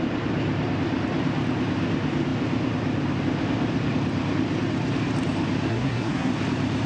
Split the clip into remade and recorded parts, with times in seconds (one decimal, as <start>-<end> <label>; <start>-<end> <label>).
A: 0.0-5.7 recorded; 5.7-6.3 remade; 6.3-6.9 recorded